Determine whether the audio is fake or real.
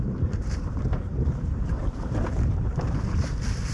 fake